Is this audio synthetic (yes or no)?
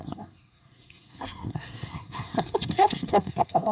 yes